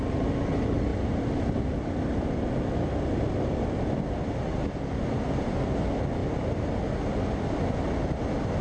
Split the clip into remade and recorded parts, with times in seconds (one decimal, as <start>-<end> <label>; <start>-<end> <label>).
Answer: 0.0-8.6 recorded